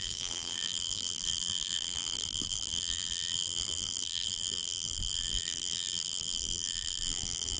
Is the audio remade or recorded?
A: remade